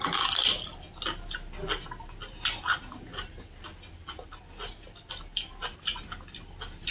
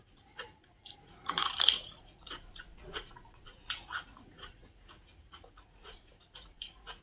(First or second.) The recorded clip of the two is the first